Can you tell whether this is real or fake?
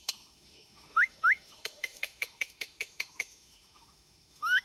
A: fake